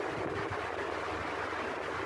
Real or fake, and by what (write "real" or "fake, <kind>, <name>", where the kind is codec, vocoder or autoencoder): real